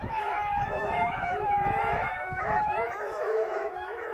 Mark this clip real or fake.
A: fake